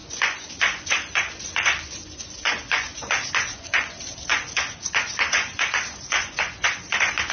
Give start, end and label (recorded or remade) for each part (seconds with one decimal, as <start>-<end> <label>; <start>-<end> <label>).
0.0-7.3 remade